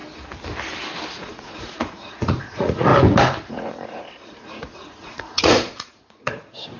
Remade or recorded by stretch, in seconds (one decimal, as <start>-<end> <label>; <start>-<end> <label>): 0.0-1.1 recorded; 1.1-2.9 remade; 2.9-3.5 recorded; 3.5-6.8 remade